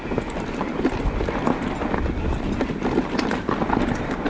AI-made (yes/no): no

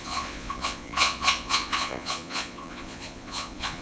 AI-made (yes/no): yes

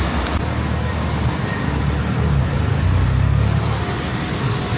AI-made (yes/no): no